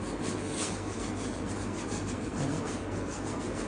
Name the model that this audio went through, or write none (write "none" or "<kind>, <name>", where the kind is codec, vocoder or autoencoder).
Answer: codec, SNAC